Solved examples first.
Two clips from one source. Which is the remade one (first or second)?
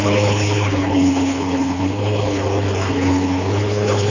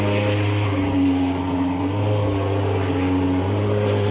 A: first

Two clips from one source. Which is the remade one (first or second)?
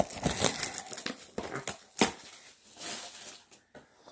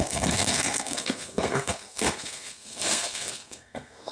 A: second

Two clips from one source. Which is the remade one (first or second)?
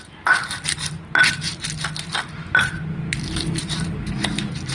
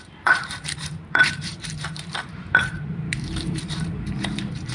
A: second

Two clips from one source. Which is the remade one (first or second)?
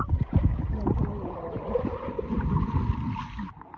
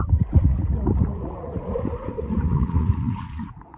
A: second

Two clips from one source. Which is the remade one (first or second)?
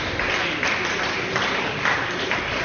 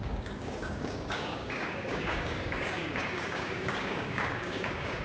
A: second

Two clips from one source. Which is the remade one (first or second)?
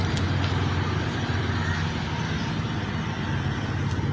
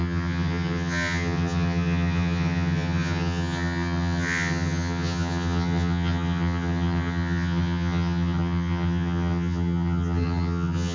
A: second